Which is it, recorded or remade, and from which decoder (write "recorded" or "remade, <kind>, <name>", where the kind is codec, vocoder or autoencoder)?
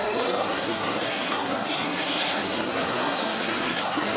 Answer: remade, codec, SNAC